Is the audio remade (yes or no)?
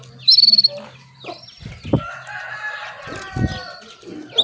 no